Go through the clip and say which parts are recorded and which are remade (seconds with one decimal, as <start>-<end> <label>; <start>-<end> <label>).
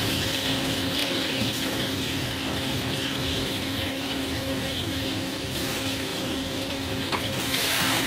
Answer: 0.0-8.1 remade